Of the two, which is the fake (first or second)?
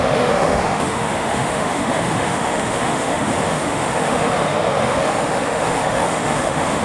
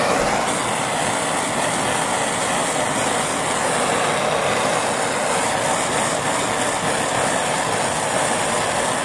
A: first